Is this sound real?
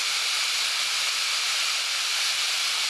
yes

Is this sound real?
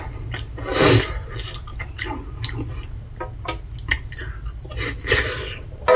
yes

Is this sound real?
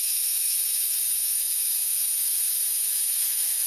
no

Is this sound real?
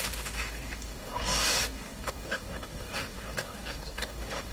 no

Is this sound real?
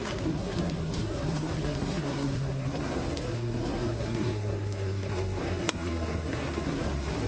no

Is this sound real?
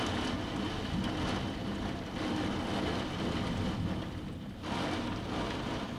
yes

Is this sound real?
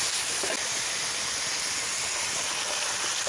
yes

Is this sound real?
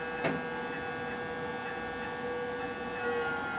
yes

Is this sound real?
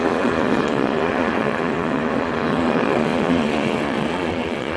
no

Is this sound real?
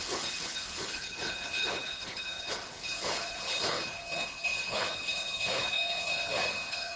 no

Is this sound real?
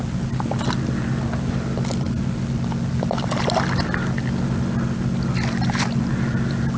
yes